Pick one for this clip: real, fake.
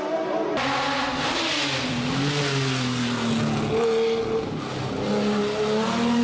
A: real